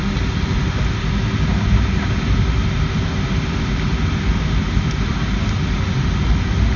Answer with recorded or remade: recorded